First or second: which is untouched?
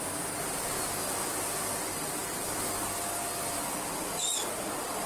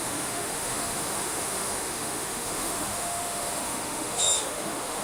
first